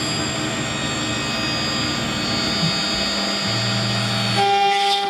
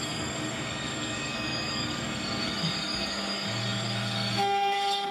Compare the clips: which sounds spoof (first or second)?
second